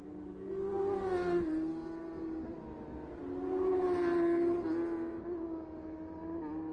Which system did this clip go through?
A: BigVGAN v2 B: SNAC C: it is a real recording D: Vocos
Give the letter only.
C